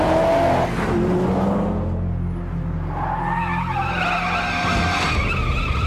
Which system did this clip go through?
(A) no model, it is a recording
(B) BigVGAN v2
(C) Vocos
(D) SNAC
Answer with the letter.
A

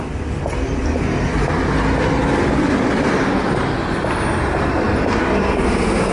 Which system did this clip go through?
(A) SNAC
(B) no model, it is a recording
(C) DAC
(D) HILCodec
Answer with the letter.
B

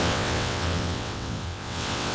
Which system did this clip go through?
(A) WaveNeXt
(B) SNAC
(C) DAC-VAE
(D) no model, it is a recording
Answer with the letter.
A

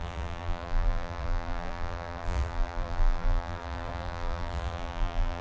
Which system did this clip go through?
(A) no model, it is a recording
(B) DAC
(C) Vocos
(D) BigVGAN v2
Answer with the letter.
D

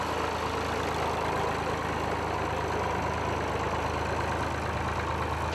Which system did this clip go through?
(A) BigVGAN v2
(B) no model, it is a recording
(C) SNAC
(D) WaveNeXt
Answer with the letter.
B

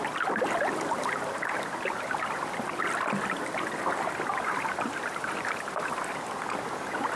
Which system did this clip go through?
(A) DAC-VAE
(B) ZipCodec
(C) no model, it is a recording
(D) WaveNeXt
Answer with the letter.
C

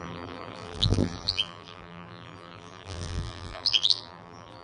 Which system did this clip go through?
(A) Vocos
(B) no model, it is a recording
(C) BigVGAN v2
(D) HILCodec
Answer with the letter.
C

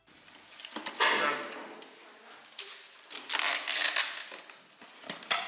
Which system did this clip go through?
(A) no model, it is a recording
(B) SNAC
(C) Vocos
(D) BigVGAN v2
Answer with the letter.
A